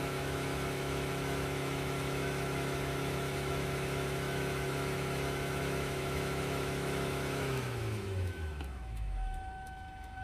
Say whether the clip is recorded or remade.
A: remade